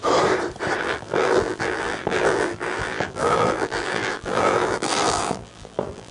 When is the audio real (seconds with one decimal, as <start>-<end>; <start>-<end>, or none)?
0.0-0.8